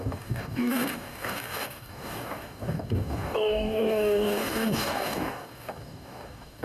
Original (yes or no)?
no